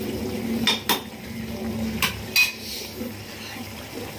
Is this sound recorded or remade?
recorded